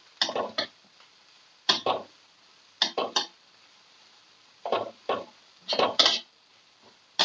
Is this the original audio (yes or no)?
no